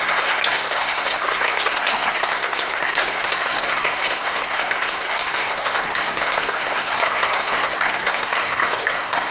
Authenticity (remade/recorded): remade